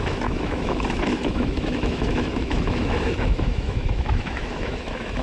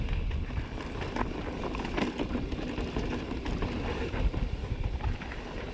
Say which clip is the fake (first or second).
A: first